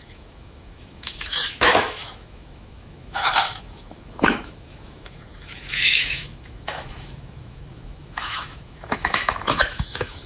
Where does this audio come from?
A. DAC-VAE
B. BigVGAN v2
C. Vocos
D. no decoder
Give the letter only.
A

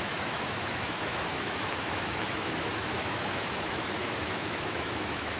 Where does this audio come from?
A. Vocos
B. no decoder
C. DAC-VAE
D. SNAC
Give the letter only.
C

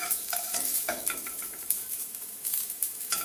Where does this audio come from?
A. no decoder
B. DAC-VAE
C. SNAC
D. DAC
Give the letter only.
B